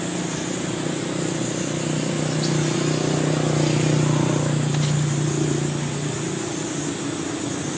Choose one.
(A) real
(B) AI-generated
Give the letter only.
A